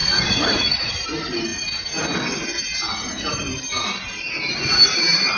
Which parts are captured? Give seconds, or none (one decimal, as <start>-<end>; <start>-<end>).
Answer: 0.9-5.4